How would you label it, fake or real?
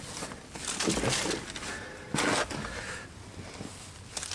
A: real